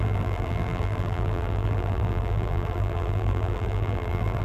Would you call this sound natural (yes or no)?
no